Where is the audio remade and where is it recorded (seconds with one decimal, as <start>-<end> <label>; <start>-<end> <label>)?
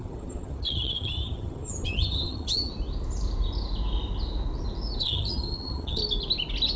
0.0-2.7 remade; 2.7-5.0 recorded; 5.0-6.0 remade; 6.0-6.8 recorded